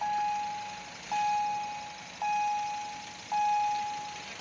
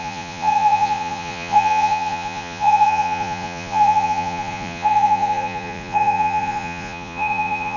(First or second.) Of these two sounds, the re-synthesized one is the second